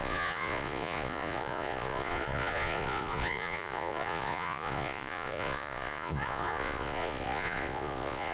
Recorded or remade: remade